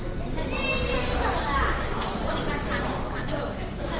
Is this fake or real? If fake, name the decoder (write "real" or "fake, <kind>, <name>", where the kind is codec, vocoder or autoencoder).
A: real